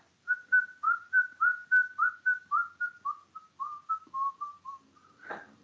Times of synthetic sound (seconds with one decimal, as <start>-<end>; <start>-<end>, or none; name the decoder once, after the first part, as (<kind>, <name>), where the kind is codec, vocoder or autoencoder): none